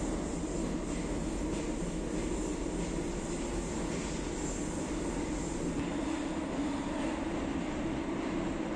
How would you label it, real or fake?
real